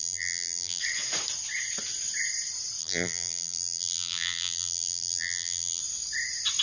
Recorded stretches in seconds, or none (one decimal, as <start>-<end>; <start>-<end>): 0.8-2.8; 5.8-6.6